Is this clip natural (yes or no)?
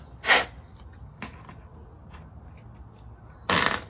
yes